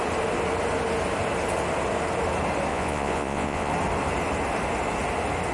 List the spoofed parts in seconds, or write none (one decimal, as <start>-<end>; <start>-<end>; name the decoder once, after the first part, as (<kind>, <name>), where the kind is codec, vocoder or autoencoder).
2.7-3.7 (vocoder, Vocos)